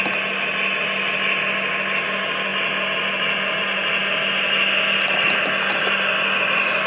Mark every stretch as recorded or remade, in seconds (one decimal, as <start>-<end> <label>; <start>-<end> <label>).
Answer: 0.0-6.9 recorded